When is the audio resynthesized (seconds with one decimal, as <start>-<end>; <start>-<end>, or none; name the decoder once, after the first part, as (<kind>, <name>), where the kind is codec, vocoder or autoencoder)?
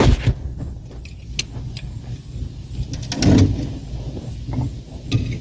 none